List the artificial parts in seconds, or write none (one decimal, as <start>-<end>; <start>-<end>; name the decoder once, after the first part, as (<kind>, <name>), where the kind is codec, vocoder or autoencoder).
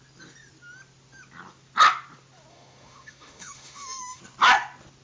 2.5-4.2 (autoencoder, DAC-VAE)